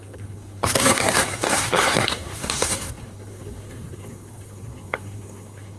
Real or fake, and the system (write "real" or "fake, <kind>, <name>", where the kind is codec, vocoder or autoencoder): fake, codec, SNAC